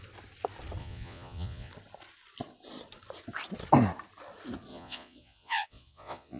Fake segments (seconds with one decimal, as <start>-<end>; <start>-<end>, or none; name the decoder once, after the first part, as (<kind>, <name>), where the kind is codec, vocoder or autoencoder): 0.8-1.7 (vocoder, Vocos); 4.7-6.4